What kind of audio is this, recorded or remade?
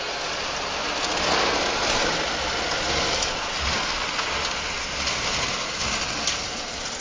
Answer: recorded